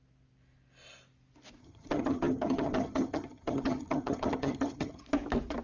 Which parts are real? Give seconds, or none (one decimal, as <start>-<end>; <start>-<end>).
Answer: 0.0-1.6; 5.0-5.6